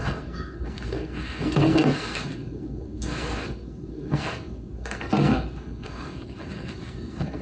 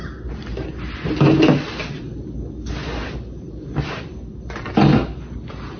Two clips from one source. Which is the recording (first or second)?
second